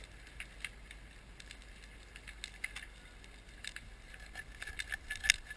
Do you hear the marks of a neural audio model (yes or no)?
no